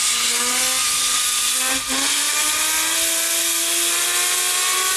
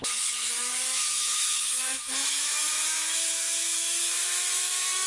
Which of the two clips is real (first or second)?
first